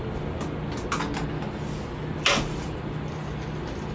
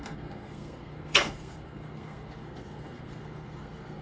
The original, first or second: first